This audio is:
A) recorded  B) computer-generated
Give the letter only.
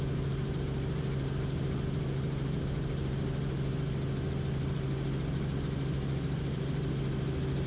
A